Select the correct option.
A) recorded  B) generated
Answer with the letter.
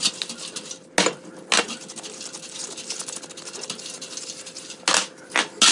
A